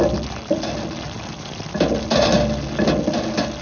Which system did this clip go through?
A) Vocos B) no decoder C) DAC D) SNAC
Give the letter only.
B